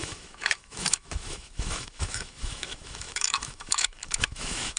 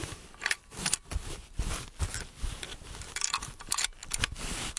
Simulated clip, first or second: first